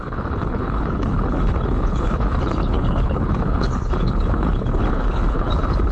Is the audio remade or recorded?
remade